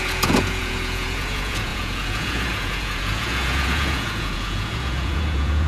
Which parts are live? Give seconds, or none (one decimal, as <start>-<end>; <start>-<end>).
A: none